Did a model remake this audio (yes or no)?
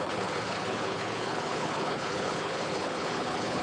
yes